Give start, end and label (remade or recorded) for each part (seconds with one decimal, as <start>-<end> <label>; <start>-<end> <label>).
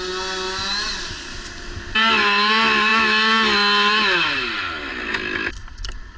0.0-6.2 recorded